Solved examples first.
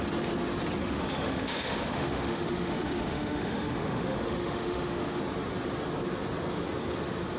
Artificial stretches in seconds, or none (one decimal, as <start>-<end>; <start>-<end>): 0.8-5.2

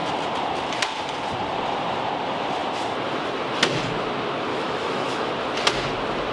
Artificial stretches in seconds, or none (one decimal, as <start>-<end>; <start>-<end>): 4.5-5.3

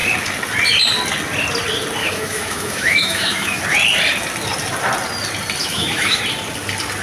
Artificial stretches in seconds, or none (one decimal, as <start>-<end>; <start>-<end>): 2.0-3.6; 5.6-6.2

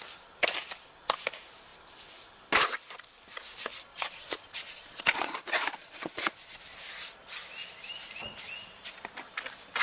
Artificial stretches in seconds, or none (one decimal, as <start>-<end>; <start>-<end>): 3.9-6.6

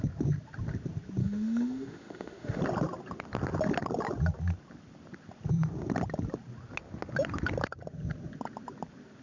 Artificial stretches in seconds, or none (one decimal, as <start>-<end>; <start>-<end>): 1.2-2.6

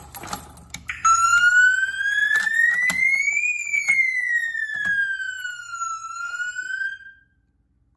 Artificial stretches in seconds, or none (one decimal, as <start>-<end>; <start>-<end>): 3.7-4.3

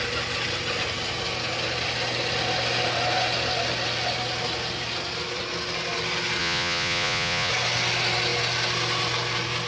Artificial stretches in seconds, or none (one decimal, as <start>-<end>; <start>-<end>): 6.4-7.5